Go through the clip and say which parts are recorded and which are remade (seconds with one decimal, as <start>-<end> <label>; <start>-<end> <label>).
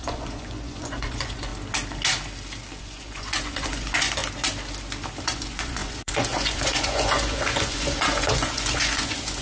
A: 0.0-1.5 remade; 1.5-2.8 recorded; 2.8-4.2 remade; 4.2-5.2 recorded; 5.2-9.4 remade